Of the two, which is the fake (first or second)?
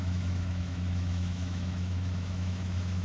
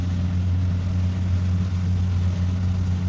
first